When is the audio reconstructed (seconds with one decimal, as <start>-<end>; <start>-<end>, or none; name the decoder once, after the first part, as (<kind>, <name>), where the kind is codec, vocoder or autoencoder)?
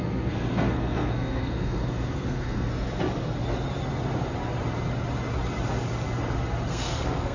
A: 0.0-2.7 (codec, SNAC); 6.7-7.3